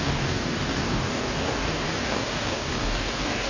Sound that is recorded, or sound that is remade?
remade